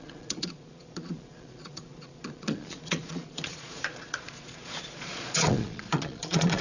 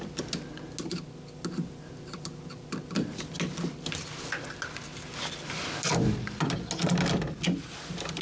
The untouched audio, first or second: second